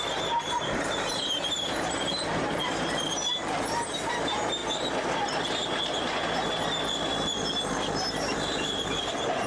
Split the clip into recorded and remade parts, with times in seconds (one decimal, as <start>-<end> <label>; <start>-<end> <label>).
0.0-4.6 remade; 4.6-8.1 recorded; 8.1-9.5 remade